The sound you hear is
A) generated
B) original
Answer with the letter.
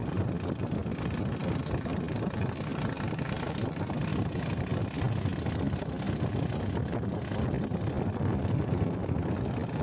B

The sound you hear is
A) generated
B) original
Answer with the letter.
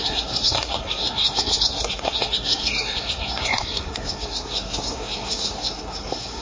A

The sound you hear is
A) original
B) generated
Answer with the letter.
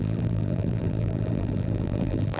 B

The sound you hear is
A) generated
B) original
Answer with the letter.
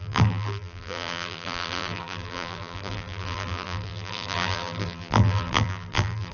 A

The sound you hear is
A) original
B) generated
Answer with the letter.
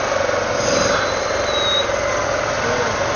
A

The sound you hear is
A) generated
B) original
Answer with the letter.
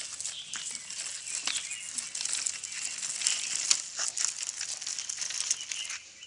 B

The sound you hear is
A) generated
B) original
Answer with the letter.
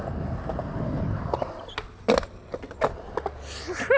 B